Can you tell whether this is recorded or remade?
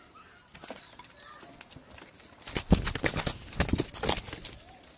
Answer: recorded